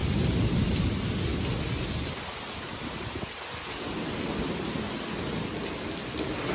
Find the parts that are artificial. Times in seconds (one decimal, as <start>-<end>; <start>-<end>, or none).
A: none